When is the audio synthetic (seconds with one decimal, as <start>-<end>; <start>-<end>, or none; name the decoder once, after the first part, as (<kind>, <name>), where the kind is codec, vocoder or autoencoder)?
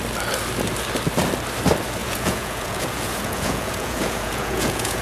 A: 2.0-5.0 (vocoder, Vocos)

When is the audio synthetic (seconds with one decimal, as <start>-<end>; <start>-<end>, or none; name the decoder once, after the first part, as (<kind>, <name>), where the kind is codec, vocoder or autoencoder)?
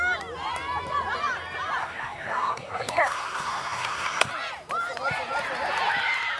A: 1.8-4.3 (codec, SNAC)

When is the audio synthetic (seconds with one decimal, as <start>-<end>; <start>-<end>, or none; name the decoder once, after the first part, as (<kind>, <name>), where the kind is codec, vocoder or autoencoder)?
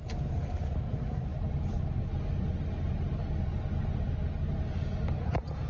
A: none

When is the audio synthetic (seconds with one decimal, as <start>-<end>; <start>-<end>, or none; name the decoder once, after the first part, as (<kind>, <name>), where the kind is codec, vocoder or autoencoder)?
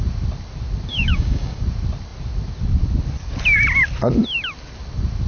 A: 0.9-1.6 (codec, DAC)